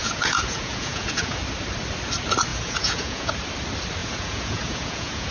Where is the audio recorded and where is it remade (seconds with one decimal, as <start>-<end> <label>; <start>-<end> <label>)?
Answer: 0.0-1.4 remade; 1.4-2.5 recorded; 2.5-3.3 remade; 3.3-4.0 recorded; 4.0-5.3 remade